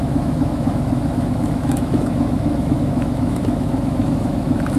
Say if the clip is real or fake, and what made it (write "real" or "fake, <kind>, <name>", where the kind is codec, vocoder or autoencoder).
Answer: fake, autoencoder, DAC-VAE